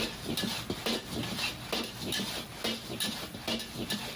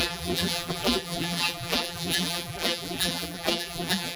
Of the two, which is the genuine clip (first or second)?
first